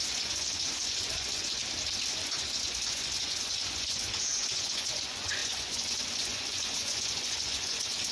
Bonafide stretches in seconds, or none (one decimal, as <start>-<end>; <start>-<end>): 1.6-2.1